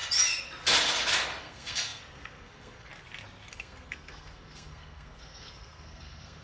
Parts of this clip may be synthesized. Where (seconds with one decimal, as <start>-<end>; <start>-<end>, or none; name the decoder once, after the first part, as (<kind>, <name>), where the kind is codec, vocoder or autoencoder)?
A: 1.4-2.9 (codec, SNAC); 3.5-6.4